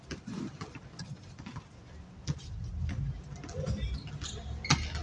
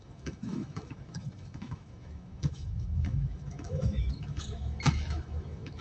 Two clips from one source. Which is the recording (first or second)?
first